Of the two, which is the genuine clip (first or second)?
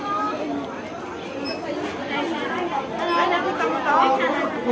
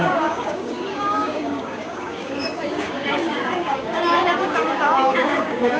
first